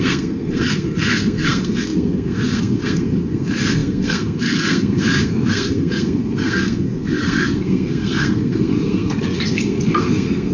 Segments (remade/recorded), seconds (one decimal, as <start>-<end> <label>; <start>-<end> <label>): 0.0-10.5 remade